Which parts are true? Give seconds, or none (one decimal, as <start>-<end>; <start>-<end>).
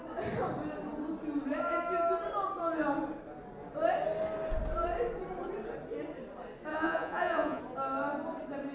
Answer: 0.0-6.7; 7.6-8.7